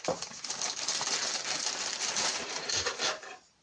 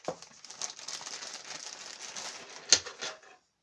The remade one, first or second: first